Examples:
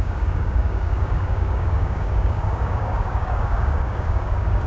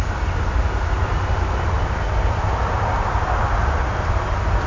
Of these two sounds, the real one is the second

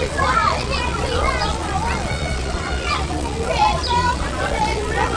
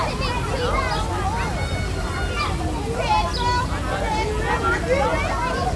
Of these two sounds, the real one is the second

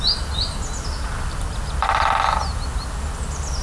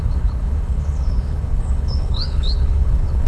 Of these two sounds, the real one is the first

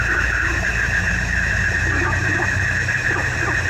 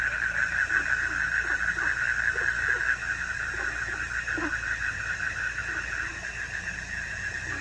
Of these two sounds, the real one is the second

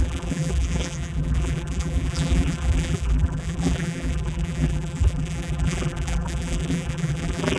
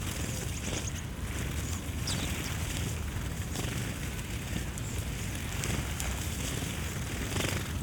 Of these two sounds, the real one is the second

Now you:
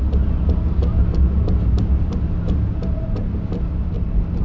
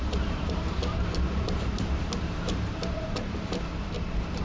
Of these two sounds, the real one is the first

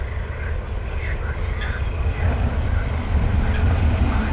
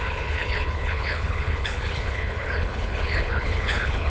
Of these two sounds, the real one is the first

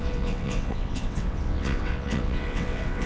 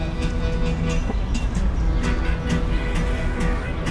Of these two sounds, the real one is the second